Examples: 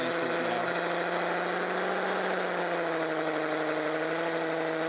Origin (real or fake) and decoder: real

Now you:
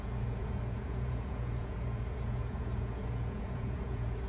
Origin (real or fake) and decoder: fake, vocoder, Vocos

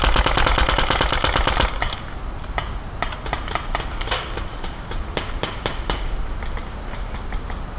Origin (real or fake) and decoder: real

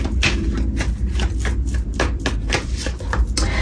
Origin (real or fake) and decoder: real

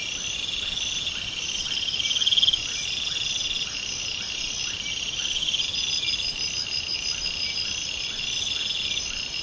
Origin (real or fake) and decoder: real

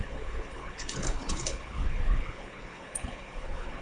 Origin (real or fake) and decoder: fake, codec, HILCodec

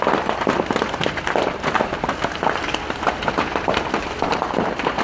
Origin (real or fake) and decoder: fake, vocoder, BigVGAN v2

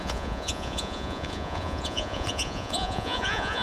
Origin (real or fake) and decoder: fake, vocoder, Vocos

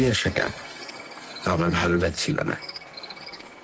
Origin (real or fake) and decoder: fake, codec, SNAC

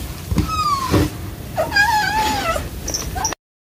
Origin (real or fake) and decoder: real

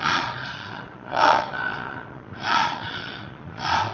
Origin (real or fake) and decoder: fake, vocoder, Vocos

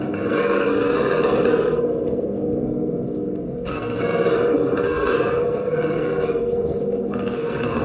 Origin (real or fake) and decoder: fake, codec, SNAC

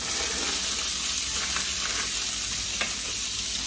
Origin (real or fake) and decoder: real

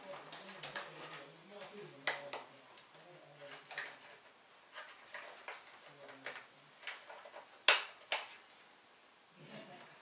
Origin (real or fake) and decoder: real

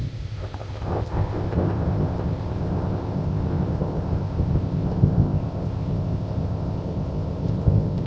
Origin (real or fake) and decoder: fake, codec, ZipCodec